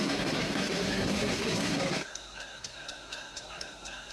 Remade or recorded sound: remade